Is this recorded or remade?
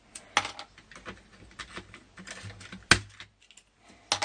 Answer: recorded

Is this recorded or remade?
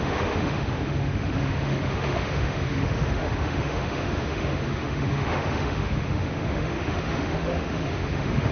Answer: remade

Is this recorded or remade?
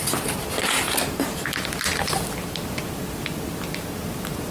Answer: recorded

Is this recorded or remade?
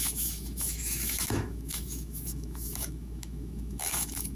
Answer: remade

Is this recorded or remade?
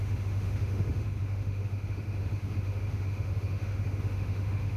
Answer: remade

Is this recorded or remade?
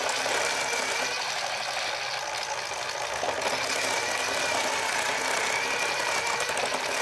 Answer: recorded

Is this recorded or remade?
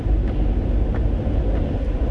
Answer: recorded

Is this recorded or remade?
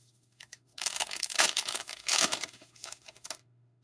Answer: remade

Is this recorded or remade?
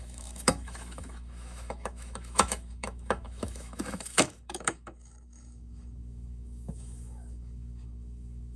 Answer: remade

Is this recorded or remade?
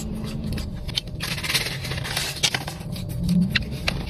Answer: recorded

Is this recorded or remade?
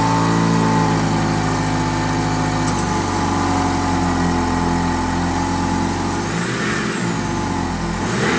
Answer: recorded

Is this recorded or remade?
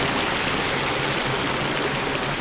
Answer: recorded